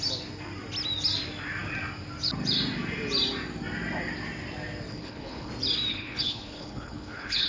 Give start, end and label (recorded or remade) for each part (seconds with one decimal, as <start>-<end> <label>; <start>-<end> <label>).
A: 0.0-4.9 recorded; 4.9-5.5 remade; 5.5-5.9 recorded; 5.9-7.5 remade